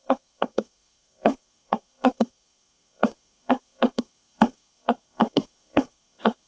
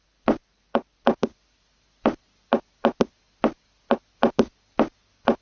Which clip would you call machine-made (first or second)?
first